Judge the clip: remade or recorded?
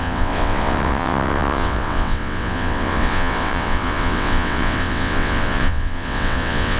remade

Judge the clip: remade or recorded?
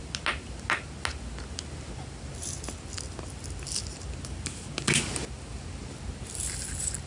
recorded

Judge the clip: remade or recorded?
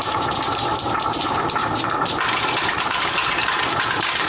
remade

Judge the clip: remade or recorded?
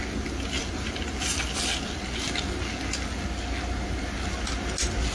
recorded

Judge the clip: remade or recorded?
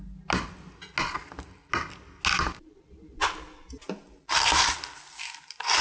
recorded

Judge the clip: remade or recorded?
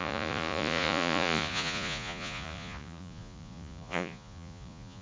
remade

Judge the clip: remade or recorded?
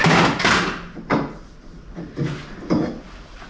recorded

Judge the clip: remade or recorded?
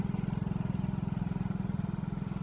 recorded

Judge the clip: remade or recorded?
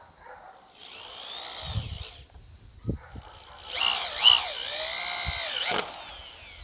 recorded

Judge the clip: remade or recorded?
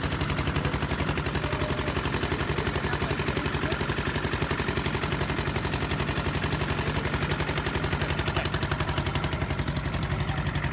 recorded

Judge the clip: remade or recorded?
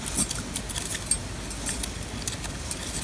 recorded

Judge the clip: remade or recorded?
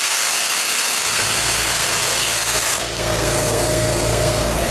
remade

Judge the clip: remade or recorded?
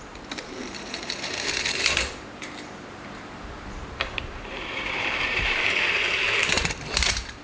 remade